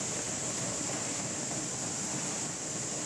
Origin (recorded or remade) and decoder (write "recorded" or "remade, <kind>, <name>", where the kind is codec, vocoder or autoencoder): remade, vocoder, BigVGAN v2